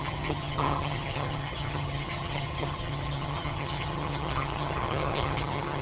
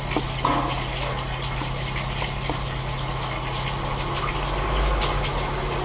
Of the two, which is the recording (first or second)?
second